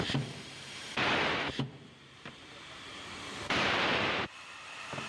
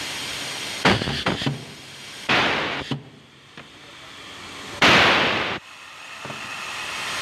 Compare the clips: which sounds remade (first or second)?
first